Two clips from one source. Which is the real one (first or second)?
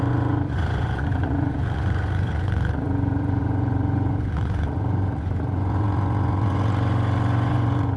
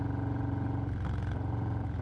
second